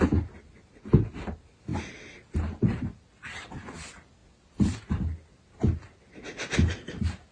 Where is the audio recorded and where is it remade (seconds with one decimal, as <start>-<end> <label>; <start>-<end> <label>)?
0.0-7.3 recorded